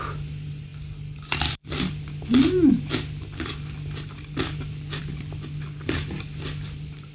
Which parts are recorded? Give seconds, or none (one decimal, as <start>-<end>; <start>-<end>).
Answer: none